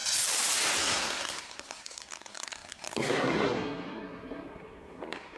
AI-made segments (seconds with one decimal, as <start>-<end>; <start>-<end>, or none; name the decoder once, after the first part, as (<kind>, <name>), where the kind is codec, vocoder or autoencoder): 0.8-5.4 (codec, SNAC)